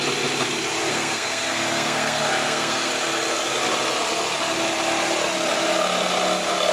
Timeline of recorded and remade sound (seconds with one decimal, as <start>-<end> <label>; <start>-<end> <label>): 0.0-0.9 recorded; 0.9-2.9 remade; 2.9-6.7 recorded